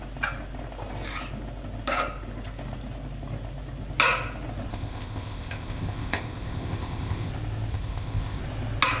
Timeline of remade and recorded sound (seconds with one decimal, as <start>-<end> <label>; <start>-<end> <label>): 0.0-4.7 recorded; 4.7-7.3 remade; 7.3-7.7 recorded; 7.7-8.4 remade; 8.4-9.0 recorded